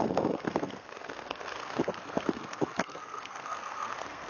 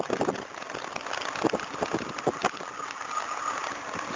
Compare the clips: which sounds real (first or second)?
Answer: second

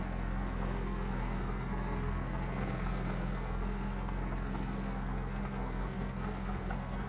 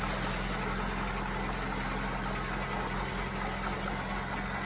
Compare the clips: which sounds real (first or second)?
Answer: second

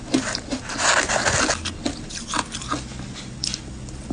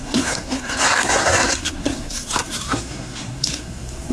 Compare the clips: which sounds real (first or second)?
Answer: first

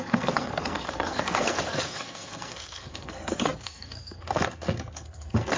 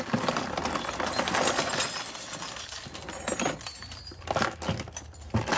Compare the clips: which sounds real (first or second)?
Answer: second